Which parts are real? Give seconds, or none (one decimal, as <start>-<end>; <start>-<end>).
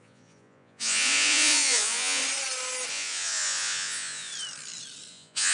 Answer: 2.2-2.9; 4.3-5.1